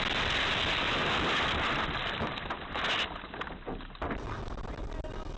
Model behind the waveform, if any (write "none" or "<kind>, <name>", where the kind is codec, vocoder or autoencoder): none